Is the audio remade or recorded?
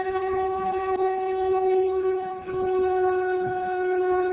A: remade